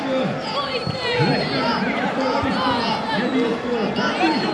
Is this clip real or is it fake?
real